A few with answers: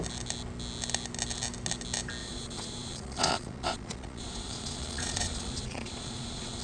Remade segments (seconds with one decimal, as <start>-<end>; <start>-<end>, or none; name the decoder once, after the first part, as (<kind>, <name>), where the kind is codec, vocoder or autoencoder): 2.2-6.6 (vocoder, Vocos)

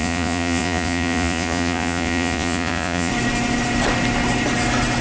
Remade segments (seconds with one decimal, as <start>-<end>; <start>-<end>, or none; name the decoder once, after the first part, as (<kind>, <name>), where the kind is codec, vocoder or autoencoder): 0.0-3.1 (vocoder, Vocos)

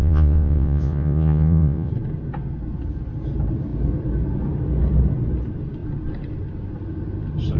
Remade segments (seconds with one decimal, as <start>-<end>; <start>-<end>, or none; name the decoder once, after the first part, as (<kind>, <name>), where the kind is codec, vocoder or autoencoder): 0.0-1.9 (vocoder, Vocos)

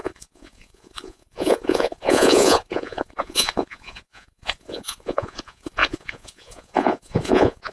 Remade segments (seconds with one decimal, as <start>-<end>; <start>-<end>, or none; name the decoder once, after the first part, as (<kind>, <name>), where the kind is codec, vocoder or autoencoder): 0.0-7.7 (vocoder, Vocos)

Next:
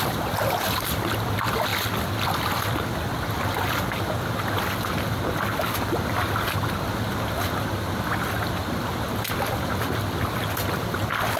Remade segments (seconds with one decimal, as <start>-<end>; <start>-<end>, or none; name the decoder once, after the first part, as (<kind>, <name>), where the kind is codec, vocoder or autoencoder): none